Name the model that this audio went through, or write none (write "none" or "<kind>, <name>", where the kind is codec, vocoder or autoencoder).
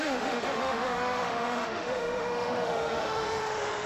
autoencoder, DAC-VAE